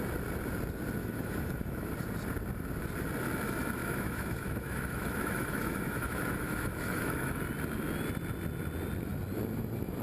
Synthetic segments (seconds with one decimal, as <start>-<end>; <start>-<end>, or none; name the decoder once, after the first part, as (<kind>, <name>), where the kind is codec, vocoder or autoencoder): 1.0-1.9 (autoencoder, DAC-VAE); 3.8-7.4